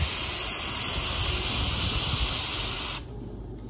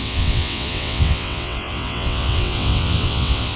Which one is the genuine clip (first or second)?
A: first